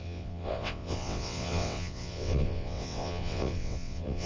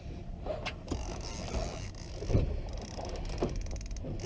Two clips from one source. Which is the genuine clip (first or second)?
second